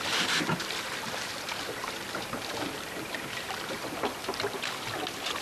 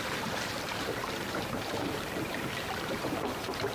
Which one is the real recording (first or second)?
first